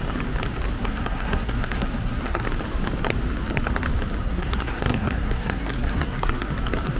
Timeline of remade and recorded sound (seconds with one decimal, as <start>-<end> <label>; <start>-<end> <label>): 0.0-0.8 recorded; 0.8-2.4 remade; 2.4-4.2 recorded; 4.2-6.5 remade; 6.5-7.0 recorded